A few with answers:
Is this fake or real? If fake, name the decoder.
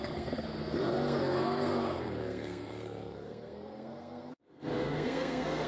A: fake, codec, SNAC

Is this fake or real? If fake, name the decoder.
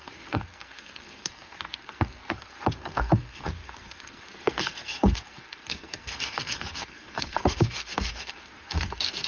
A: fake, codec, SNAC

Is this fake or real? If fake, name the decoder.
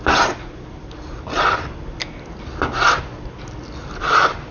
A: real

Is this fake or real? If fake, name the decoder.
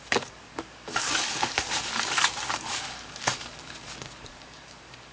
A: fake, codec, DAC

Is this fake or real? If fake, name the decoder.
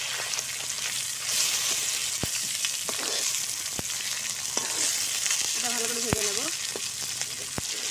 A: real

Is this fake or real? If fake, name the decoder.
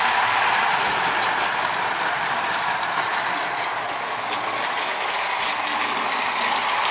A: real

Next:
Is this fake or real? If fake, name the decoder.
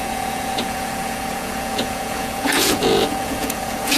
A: fake, vocoder, Vocos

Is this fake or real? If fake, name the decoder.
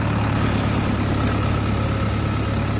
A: real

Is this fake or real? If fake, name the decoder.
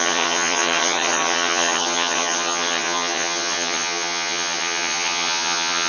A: fake, vocoder, HiFi-GAN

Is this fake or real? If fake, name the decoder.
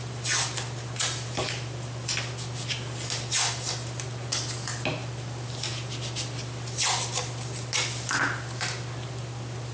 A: real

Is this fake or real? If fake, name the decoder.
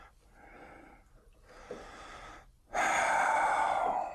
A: real